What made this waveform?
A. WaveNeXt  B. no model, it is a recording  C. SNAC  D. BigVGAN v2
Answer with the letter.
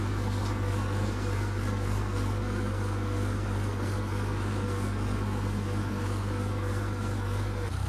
C